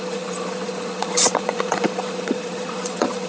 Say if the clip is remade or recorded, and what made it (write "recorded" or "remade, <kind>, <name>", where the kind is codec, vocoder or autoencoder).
remade, vocoder, Vocos